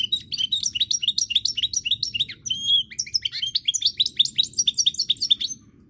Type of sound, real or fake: real